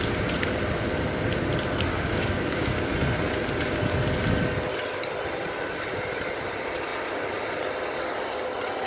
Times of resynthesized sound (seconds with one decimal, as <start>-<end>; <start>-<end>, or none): 1.9-2.8